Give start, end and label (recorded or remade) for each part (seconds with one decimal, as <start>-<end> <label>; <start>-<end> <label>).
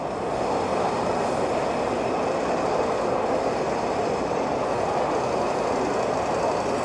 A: 0.0-6.8 recorded